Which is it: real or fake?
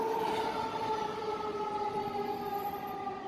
fake